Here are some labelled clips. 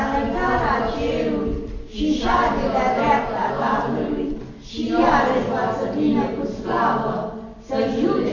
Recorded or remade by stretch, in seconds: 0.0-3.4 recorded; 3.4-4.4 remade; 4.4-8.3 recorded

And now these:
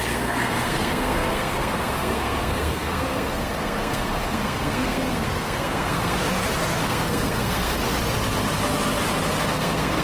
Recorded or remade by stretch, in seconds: 0.0-6.2 remade; 6.2-6.8 recorded; 6.8-7.8 remade; 7.8-9.5 recorded; 9.5-10.0 remade

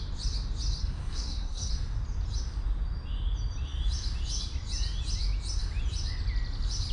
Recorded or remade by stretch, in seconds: 0.0-0.8 recorded; 0.8-1.7 remade; 1.7-6.9 recorded